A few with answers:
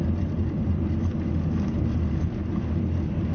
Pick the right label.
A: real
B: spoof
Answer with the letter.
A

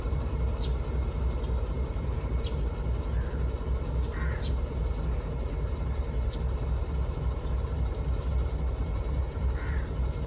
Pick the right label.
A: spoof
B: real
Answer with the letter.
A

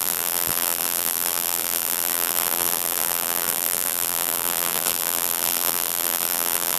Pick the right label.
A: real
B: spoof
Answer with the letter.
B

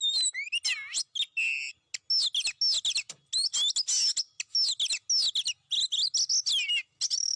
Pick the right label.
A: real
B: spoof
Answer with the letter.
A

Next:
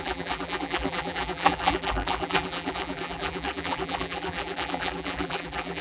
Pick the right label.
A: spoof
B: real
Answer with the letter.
A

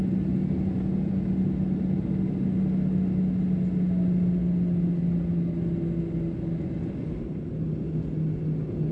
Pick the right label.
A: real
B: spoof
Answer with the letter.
A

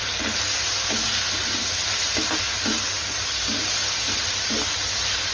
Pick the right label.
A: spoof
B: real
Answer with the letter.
B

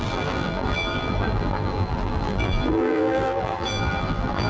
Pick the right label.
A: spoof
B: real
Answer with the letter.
A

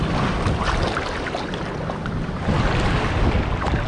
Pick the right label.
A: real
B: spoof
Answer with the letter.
A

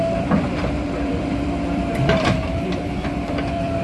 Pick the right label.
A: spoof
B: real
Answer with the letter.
A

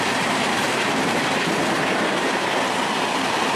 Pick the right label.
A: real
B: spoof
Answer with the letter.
B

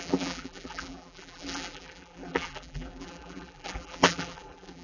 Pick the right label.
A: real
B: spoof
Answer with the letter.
B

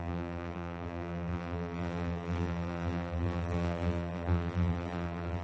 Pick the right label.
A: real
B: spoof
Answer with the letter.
B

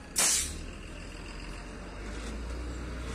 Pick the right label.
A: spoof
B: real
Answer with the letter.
B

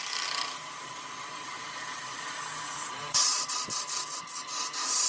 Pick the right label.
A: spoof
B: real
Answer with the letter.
B